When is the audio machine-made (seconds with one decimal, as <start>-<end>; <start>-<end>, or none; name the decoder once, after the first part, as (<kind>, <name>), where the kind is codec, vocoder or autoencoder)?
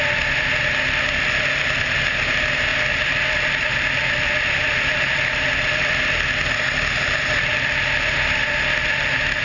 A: none